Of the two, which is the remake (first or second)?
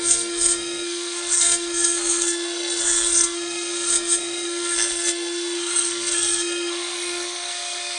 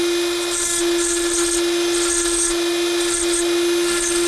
first